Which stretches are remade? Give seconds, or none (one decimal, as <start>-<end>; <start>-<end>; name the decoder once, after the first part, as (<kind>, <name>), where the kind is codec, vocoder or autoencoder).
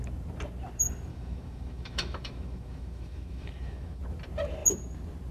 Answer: 1.1-4.0 (autoencoder, DAC-VAE)